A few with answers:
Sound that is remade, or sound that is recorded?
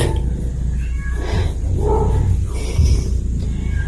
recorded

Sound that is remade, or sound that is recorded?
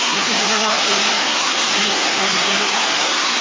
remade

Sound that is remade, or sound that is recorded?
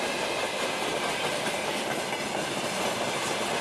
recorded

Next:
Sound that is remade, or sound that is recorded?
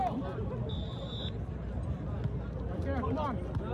recorded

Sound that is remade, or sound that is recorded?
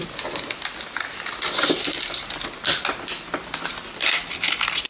recorded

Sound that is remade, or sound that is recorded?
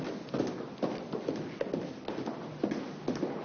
recorded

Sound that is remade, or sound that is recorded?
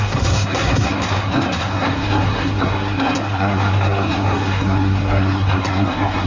remade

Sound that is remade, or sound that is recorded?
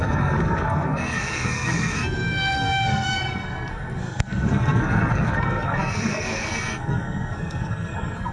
remade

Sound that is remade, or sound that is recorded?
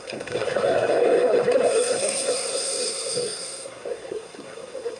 remade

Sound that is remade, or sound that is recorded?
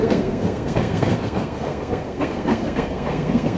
remade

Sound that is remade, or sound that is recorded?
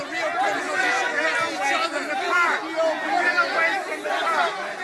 recorded